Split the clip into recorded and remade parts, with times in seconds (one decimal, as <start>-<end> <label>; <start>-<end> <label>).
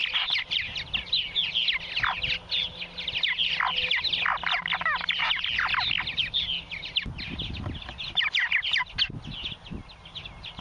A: 0.0-10.6 recorded